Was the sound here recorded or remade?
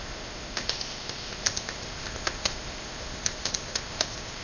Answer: remade